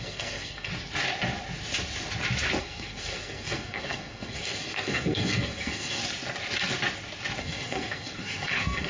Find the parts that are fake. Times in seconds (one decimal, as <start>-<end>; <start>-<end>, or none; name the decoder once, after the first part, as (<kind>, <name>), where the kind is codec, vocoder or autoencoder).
0.0-0.7 (codec, SNAC); 2.6-6.0; 7.4-8.9